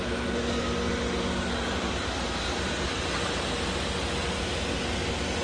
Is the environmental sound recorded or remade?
recorded